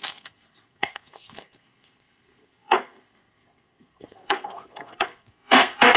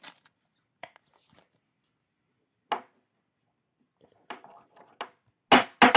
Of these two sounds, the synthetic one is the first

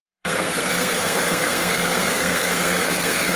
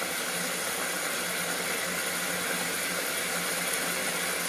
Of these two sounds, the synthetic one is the first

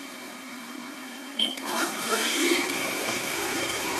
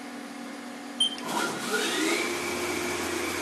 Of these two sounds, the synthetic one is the first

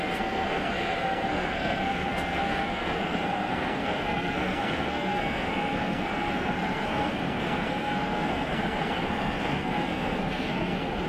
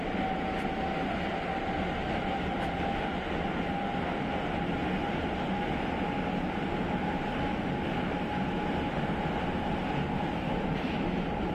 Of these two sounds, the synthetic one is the first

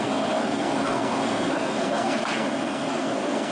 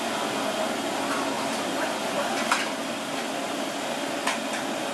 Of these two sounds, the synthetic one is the first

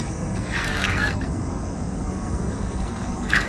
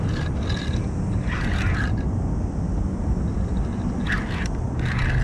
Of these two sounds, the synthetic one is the first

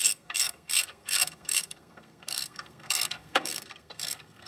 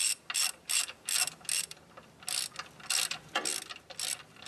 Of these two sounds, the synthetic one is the first